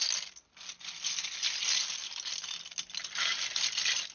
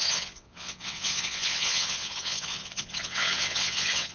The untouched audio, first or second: first